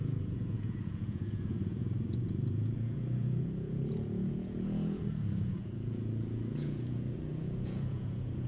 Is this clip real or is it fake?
fake